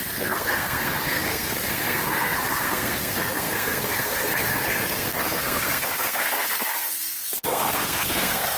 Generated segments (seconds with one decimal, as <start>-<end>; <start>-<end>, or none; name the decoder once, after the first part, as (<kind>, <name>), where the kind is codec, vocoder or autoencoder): 0.0-8.6 (codec, SNAC)